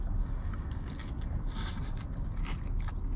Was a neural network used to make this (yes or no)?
no